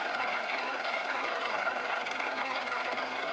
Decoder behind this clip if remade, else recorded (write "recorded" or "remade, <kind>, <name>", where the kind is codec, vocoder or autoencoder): remade, codec, SNAC